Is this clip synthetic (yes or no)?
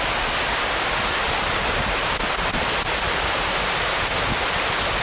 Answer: no